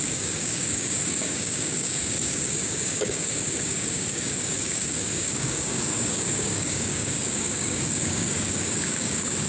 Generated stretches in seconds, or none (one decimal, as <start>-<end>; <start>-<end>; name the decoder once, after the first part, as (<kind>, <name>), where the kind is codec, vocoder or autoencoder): 0.0-9.5 (codec, DAC)